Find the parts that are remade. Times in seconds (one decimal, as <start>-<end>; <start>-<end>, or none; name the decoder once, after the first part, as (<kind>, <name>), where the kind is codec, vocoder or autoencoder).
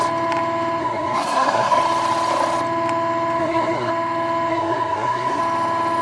0.8-1.8 (codec, SNAC); 3.4-3.9; 4.5-5.4